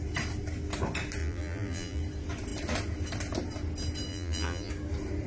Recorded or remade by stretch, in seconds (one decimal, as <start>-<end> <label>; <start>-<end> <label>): 0.0-1.2 recorded; 1.2-2.0 remade; 2.0-4.1 recorded; 4.1-4.7 remade; 4.7-5.3 recorded